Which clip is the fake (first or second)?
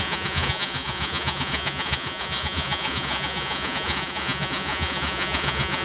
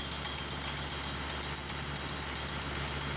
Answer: first